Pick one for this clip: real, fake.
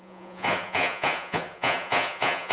fake